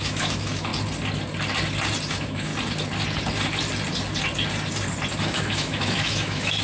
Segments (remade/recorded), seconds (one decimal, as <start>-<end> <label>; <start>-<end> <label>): 0.0-0.7 remade; 0.7-2.1 recorded; 2.1-2.5 remade; 2.5-5.2 recorded; 5.2-6.6 remade